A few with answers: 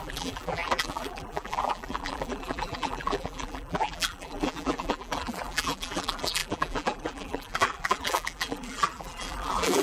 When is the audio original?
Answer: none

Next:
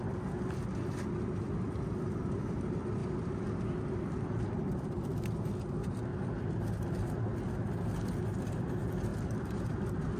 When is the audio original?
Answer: 0.0-3.0; 5.2-6.1; 6.9-9.1; 9.6-10.2

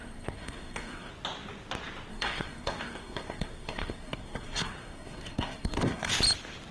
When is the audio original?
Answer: 1.1-2.1; 6.1-6.7

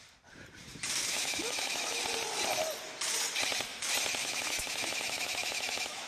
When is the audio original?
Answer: 0.0-1.0; 2.0-4.2

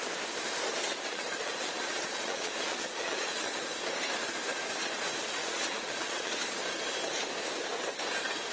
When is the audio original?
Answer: 0.0-0.9; 3.7-5.4; 6.3-8.5

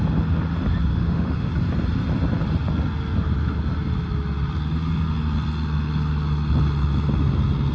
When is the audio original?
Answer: 0.0-0.9; 1.5-7.7

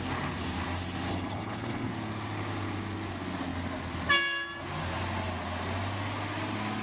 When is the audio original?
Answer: 0.0-1.1; 1.9-6.8